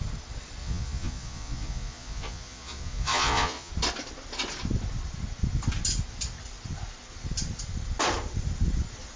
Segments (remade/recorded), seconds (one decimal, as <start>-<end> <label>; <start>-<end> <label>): 0.0-0.6 recorded; 0.6-3.7 remade; 3.7-9.2 recorded